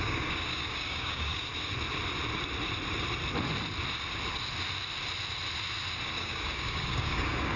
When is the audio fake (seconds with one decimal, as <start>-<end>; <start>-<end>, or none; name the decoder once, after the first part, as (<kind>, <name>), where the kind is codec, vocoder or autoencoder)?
0.0-1.5 (codec, DAC); 6.1-7.6